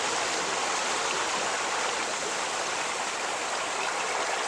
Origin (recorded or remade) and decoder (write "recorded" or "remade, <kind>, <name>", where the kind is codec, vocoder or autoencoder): recorded